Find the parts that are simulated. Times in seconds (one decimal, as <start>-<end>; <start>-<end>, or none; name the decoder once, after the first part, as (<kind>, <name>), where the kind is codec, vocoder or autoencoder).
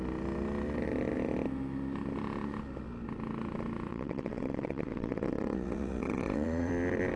3.9-6.7 (vocoder, WaveNeXt)